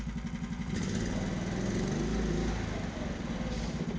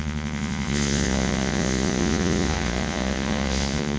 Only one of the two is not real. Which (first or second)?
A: second